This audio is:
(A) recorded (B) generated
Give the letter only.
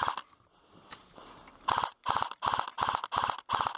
A